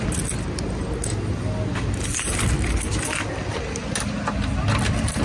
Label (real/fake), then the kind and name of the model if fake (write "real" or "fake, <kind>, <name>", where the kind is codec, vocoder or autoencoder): real